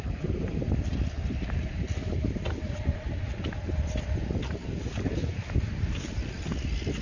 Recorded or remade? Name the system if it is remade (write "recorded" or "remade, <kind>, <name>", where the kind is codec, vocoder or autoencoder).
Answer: recorded